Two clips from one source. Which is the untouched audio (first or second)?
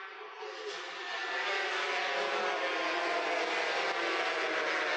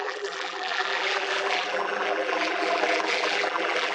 first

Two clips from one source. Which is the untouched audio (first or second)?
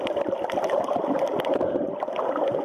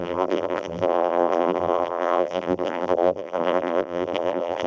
first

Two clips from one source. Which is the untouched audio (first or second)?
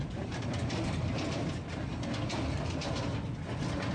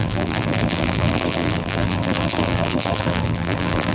first